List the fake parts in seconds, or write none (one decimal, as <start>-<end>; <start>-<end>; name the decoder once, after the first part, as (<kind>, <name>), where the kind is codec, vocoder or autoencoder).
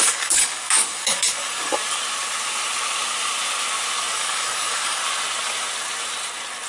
0.0-1.8 (codec, DAC); 4.1-5.0